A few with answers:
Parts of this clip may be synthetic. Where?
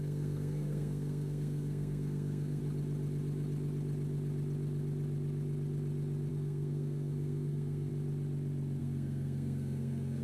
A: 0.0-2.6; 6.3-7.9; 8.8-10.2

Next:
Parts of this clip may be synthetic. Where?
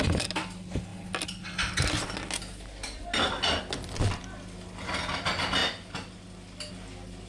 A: none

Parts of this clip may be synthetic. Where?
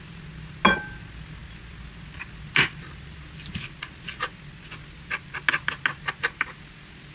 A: none